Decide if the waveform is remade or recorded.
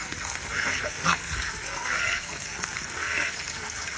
remade